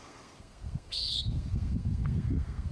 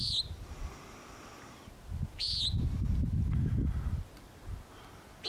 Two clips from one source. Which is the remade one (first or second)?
first